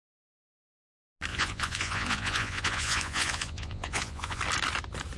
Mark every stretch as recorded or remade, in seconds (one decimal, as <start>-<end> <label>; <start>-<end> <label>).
0.0-1.3 recorded; 1.3-4.4 remade; 4.4-5.2 recorded